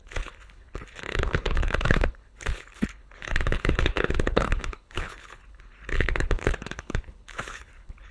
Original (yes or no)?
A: no